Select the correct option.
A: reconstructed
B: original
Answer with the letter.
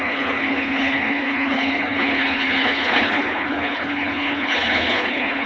A